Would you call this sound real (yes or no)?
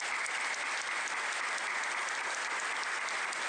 yes